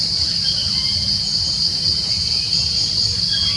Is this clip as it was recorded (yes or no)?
yes